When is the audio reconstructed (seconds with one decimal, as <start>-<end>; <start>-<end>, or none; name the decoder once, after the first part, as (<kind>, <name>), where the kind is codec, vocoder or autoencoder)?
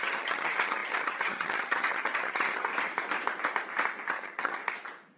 0.0-2.7 (vocoder, HiFi-GAN); 4.1-4.6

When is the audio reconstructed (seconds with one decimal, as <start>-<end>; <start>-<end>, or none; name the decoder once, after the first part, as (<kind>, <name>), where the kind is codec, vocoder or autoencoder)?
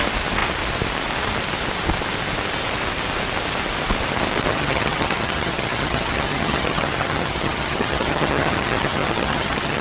4.5-9.8 (vocoder, HiFi-GAN)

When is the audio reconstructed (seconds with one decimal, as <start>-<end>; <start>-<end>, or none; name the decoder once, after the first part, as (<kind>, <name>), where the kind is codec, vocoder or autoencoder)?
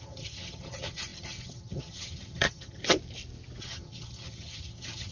0.0-2.8 (vocoder, HiFi-GAN); 3.6-5.1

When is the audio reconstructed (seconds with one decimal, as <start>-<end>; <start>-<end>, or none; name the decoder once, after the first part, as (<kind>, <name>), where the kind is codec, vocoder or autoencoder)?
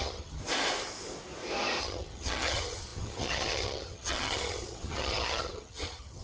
0.0-0.4 (vocoder, HiFi-GAN); 1.8-6.2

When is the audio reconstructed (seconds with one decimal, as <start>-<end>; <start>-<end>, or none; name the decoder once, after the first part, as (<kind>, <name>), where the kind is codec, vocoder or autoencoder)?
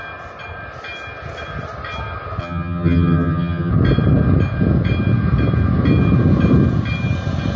2.4-3.7 (vocoder, HiFi-GAN)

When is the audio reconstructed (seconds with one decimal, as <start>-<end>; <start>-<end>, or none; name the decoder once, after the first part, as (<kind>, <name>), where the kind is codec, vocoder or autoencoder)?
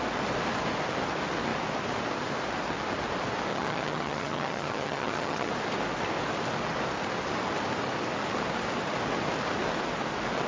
3.5-5.5 (vocoder, HiFi-GAN)